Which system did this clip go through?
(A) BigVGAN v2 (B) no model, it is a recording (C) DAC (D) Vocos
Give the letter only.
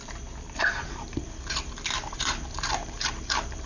A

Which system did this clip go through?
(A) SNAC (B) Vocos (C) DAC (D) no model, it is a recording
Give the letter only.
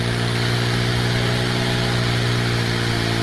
D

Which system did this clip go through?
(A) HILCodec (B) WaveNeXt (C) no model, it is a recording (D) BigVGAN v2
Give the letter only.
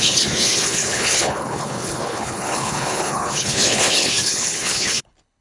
A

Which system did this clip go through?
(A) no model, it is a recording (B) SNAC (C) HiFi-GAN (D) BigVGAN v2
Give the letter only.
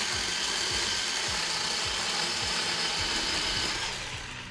A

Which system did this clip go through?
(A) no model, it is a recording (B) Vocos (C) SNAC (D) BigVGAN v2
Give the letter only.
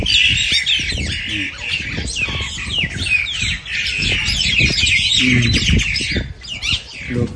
A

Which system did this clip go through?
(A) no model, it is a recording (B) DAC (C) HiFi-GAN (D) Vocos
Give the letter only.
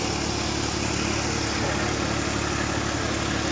A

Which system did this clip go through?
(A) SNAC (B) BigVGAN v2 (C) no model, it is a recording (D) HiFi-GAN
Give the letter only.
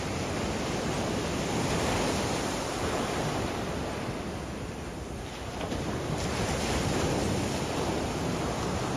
C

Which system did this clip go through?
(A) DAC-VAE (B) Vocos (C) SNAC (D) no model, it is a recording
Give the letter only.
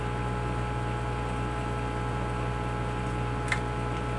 D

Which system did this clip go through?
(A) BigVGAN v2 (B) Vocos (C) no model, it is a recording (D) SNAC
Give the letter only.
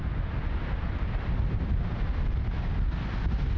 C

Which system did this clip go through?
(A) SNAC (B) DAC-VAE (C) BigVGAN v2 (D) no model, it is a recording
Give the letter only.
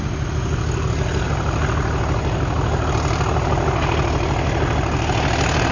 D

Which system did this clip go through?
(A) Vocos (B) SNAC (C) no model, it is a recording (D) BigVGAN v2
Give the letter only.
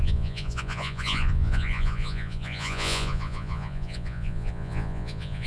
A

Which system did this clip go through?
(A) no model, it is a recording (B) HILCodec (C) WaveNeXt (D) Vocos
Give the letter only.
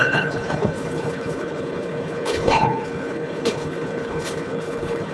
B